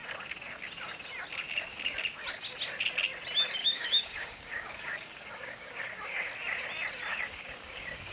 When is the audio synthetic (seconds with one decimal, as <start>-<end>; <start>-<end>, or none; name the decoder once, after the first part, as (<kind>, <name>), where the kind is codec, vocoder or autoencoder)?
3.6-6.3 (codec, DAC); 7.1-8.1